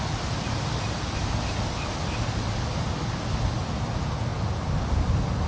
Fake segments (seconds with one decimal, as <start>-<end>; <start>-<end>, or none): none